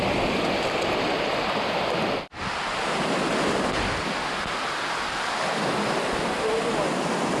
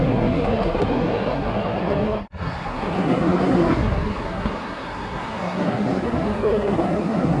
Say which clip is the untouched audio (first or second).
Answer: first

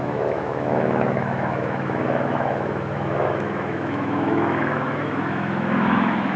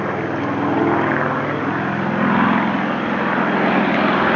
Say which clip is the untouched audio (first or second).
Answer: second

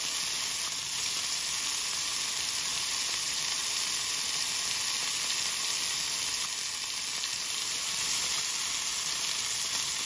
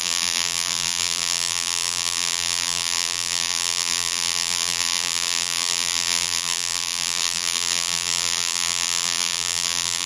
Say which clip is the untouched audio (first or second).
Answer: first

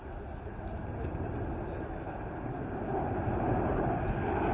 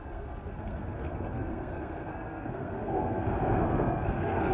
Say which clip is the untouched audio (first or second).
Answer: first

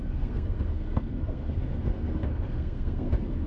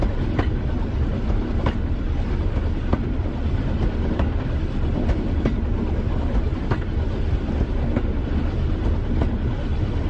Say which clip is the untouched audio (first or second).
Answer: second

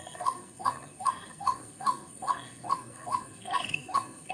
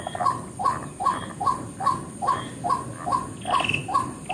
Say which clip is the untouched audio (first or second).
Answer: second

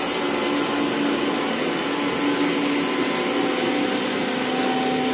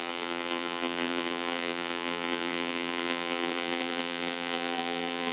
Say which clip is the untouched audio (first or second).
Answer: first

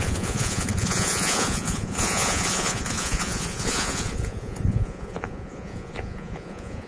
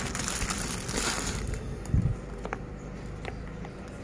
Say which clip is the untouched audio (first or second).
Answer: second